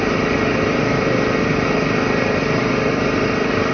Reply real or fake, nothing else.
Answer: fake